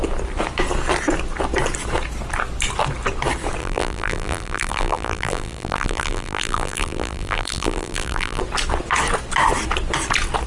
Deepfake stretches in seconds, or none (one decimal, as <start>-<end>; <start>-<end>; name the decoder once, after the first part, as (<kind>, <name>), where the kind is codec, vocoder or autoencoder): 3.6-8.4 (vocoder, BigVGAN v2)